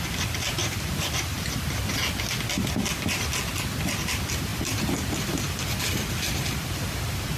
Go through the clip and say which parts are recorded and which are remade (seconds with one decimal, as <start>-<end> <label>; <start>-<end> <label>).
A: 0.0-0.6 recorded; 0.6-1.3 remade; 1.3-7.4 recorded